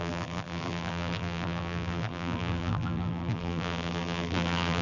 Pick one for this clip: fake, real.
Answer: fake